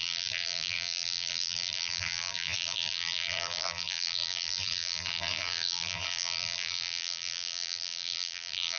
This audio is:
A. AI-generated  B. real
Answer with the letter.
A